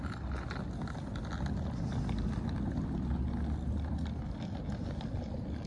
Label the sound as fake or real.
real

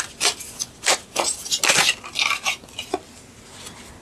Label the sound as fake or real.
real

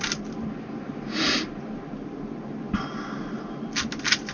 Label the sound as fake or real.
real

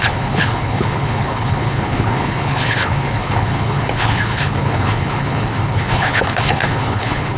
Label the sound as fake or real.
fake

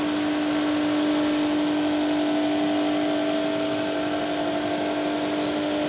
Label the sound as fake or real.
real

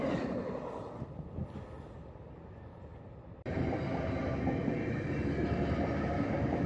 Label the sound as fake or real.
real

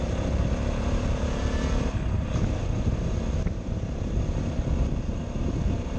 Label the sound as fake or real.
real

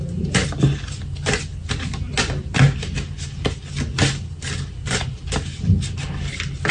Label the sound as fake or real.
real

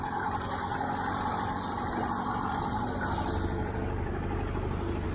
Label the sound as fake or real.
real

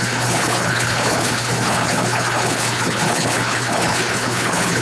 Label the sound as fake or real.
fake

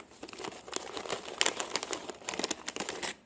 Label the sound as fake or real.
real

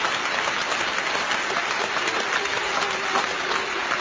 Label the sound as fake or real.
real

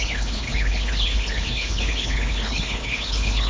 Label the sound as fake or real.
fake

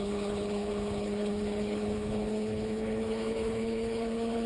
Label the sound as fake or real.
fake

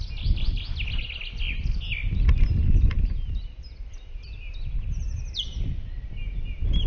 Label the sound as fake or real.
real